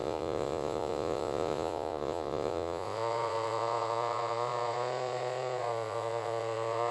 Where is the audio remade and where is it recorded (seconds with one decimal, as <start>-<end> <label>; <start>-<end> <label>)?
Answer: 0.0-6.9 remade